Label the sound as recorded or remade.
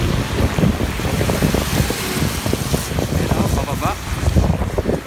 recorded